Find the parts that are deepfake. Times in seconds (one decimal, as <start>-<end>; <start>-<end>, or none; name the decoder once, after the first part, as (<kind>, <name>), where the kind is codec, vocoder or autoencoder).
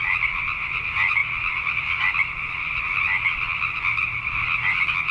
none